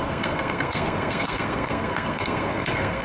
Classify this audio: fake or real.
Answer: fake